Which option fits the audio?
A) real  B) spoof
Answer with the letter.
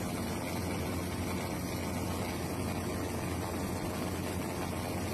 A